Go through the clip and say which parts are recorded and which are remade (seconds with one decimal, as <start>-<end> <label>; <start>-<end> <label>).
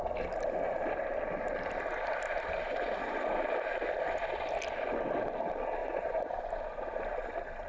0.0-5.8 recorded; 5.8-6.5 remade; 6.5-7.7 recorded